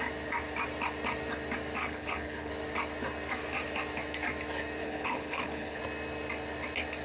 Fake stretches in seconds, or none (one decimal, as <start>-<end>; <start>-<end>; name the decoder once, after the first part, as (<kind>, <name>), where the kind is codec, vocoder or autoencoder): 1.8-2.5 (codec, HILCodec); 4.8-5.8